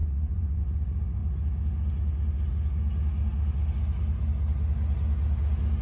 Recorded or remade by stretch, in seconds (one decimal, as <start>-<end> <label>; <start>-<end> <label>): 0.0-0.6 remade; 0.6-5.8 recorded